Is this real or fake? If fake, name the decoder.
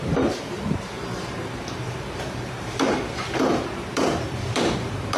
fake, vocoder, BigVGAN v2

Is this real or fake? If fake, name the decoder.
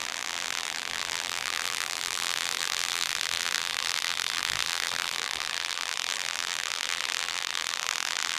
fake, vocoder, BigVGAN v2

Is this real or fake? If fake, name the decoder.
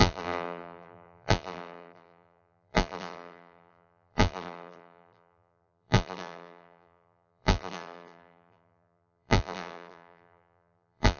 fake, vocoder, BigVGAN v2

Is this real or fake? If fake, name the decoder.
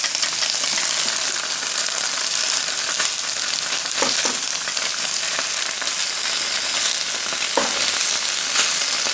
real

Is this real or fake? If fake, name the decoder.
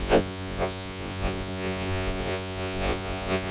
fake, vocoder, Vocos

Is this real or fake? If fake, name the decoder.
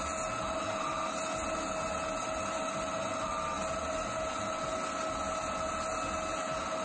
real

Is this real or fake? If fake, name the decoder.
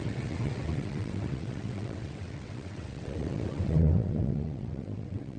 fake, vocoder, WaveNeXt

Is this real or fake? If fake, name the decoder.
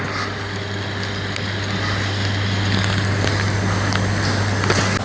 real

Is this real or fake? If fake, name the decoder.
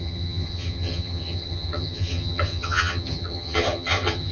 fake, vocoder, HiFi-GAN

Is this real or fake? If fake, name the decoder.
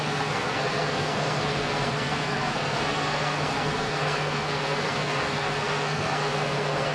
fake, codec, SNAC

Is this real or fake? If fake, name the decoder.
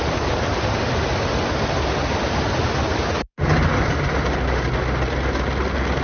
real